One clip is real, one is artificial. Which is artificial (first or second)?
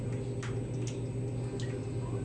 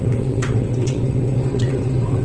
second